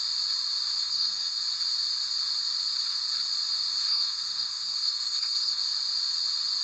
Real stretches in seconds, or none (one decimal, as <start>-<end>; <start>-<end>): 0.0-0.8; 1.4-3.8; 5.6-6.6